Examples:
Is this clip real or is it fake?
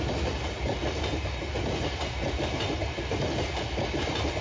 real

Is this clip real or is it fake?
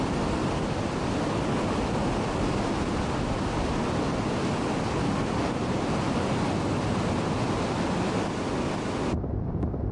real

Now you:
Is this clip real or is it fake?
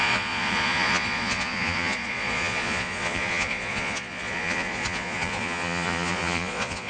fake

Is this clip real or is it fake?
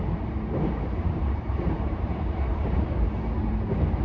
fake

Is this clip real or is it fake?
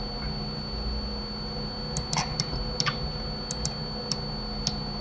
real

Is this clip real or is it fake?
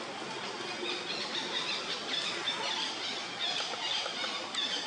real